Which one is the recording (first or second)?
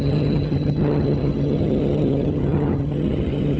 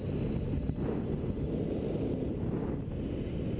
second